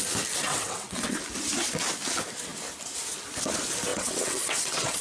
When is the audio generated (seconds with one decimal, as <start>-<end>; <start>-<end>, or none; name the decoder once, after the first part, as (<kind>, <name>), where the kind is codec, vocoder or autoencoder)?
0.5-1.2 (vocoder, WaveNeXt); 3.9-5.0